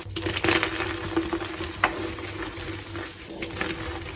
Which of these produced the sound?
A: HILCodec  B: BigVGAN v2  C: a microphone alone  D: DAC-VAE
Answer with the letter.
C